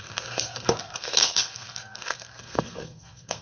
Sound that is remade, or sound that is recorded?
remade